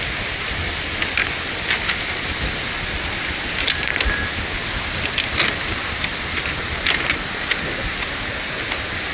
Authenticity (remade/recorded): recorded